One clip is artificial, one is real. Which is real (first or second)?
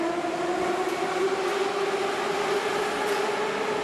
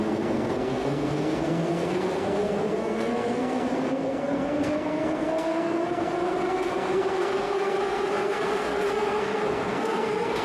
first